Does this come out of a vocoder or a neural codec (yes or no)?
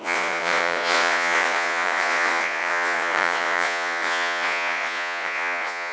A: yes